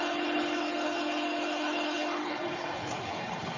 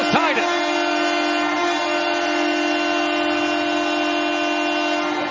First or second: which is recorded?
second